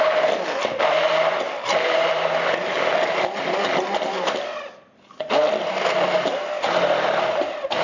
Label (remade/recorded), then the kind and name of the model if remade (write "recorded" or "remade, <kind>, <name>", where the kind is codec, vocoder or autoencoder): remade, vocoder, BigVGAN v2